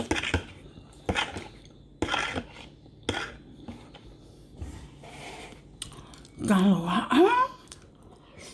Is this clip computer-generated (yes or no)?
no